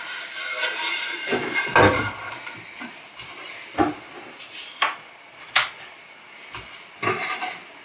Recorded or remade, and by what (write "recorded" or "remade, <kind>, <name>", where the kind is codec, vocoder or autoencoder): recorded